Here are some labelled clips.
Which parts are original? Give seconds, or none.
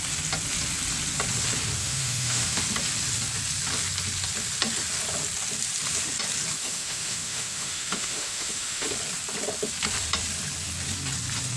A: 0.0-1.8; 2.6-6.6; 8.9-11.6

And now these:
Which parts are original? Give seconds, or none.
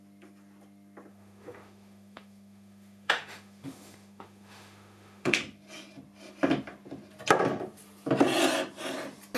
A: 0.0-1.1; 5.4-9.4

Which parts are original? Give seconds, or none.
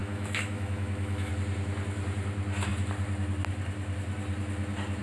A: 1.3-5.0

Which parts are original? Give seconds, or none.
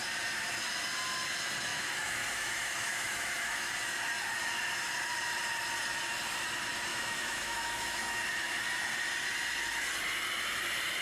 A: 0.0-1.7; 3.7-6.9; 8.2-11.0